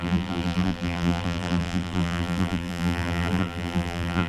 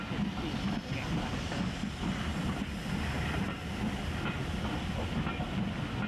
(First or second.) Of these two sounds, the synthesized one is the first